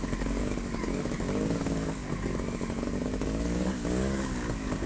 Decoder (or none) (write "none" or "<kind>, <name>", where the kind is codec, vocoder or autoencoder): codec, DAC